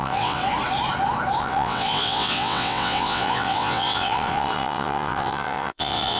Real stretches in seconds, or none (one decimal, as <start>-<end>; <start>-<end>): 0.4-1.4